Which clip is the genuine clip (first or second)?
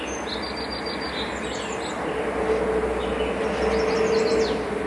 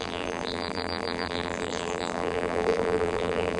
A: first